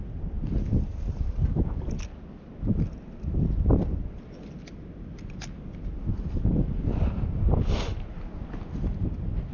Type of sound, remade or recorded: recorded